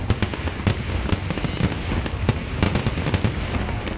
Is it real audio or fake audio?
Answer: real